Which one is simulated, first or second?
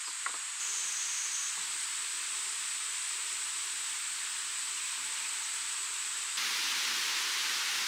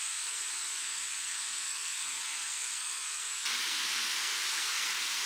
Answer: second